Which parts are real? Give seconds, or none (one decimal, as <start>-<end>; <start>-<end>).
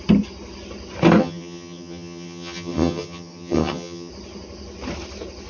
0.0-1.2; 4.1-5.5